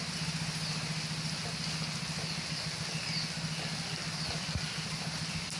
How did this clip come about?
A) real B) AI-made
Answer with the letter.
A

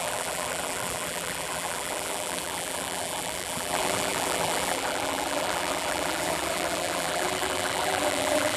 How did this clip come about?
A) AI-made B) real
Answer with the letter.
A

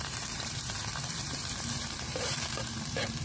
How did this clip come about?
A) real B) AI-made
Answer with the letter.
B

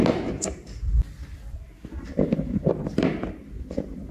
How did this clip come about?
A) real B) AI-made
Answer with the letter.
B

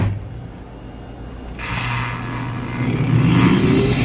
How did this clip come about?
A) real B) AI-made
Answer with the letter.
A